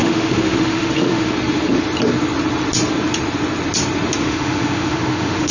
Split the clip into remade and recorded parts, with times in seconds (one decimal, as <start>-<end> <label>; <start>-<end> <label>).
0.0-1.3 remade; 1.3-4.2 recorded; 4.2-5.5 remade

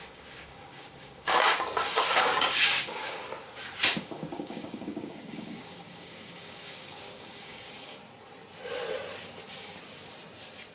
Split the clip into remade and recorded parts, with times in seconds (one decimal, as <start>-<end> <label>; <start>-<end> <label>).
0.0-3.2 remade; 3.2-4.0 recorded; 4.0-8.0 remade; 8.0-10.7 recorded

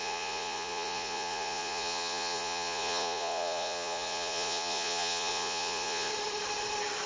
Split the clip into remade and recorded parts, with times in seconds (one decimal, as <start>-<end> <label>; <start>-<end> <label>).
0.0-6.1 remade; 6.1-7.1 recorded

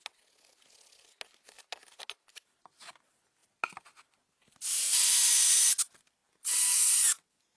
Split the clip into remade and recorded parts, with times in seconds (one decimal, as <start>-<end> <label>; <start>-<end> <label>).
0.0-7.6 recorded

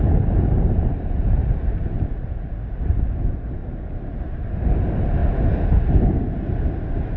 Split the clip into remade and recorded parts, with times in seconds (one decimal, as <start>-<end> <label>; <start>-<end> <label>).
0.0-7.2 remade